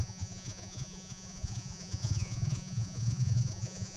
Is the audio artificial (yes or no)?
yes